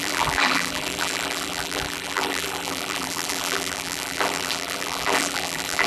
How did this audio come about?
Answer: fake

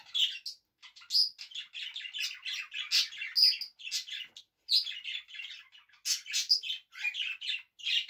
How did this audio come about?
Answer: real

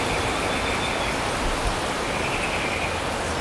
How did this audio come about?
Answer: real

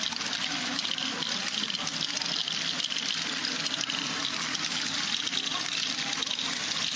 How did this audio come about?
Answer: real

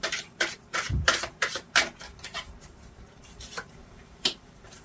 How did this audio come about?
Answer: fake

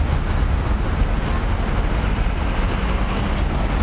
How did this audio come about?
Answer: real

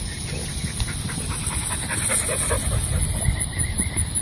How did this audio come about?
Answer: real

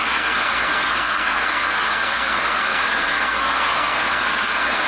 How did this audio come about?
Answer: fake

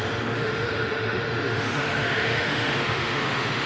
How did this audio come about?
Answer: fake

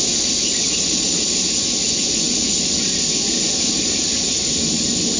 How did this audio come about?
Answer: real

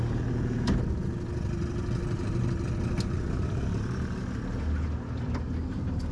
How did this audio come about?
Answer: real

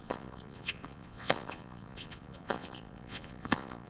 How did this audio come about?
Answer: fake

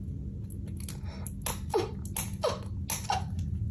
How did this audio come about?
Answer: real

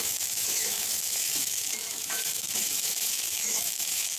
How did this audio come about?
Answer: fake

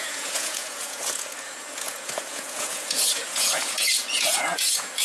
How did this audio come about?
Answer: fake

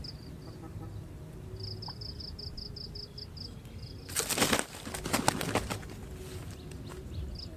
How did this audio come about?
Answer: real